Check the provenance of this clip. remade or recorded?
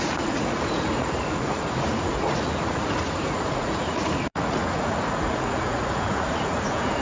remade